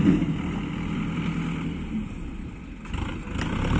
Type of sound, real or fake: real